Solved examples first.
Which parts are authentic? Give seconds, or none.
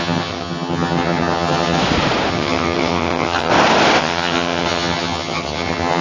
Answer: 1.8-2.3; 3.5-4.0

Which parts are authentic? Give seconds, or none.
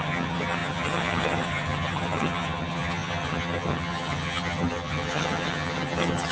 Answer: none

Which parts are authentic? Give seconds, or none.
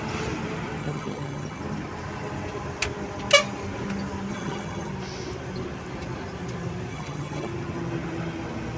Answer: 0.0-0.8; 1.6-4.3; 4.9-6.9; 7.5-8.8